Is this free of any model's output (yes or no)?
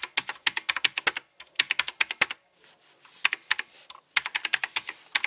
yes